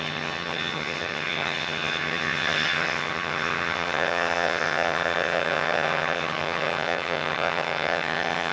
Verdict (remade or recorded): remade